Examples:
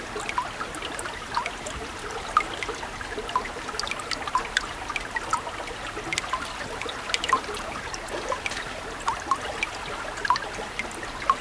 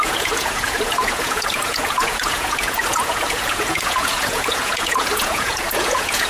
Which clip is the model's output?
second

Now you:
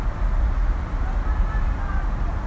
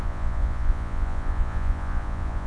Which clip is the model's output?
second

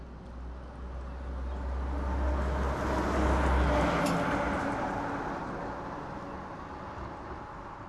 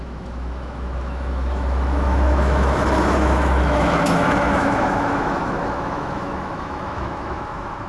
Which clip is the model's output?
second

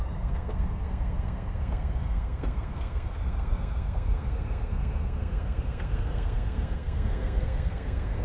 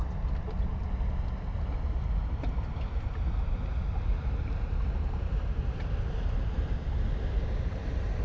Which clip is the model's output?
first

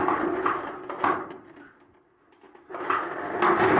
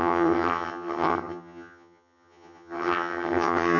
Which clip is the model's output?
second